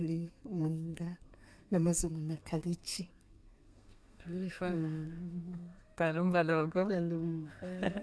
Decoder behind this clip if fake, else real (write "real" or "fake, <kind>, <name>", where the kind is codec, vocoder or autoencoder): fake, codec, SNAC